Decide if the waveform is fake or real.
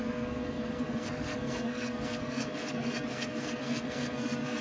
fake